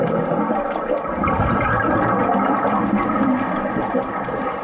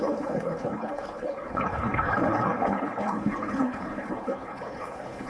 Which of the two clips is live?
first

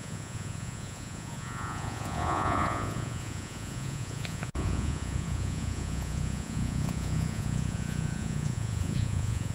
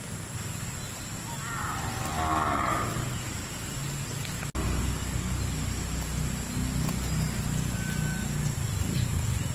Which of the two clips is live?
second